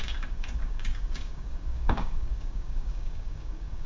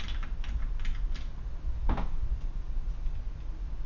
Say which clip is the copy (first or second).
first